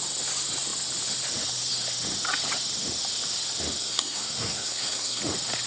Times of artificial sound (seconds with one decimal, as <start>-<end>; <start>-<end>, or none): 3.8-5.2